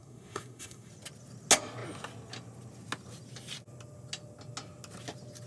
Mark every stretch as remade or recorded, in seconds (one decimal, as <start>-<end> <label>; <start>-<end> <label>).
0.0-0.9 remade; 0.9-5.5 recorded